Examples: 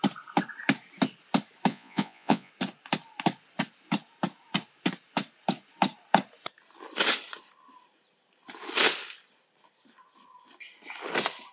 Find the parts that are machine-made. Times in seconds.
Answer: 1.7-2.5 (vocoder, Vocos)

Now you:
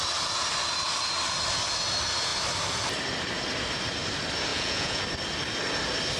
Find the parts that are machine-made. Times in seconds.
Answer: 4.5-5.0 (vocoder, Vocos)